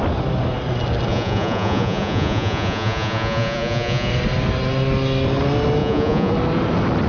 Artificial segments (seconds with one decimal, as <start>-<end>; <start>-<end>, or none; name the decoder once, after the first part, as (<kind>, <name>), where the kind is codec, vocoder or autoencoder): 1.1-4.1 (vocoder, Vocos); 5.8-6.3